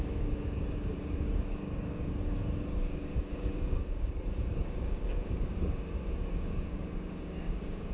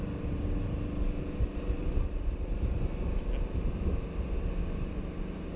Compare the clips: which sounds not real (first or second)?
first